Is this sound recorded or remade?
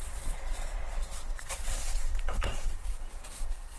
remade